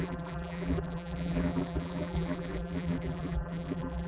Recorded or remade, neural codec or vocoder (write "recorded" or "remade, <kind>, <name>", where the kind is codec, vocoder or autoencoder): remade, vocoder, BigVGAN v2